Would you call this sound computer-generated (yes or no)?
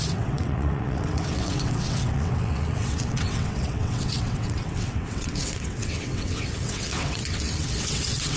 yes